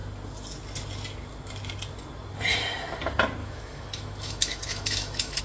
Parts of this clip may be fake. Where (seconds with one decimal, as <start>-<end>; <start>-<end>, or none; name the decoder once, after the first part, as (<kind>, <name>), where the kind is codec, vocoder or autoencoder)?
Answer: 3.4-5.4 (autoencoder, DAC-VAE)